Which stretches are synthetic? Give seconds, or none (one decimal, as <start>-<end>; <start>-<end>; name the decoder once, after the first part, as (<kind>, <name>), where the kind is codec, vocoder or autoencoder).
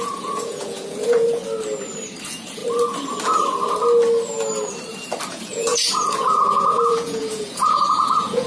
0.0-1.4 (vocoder, Vocos); 2.2-2.6; 5.3-8.5